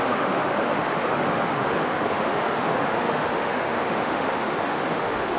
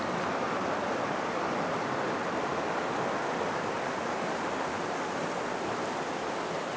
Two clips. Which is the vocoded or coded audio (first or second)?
first